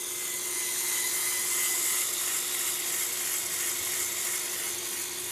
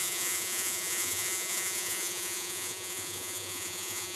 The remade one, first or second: second